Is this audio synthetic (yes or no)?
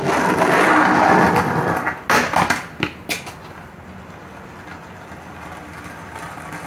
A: no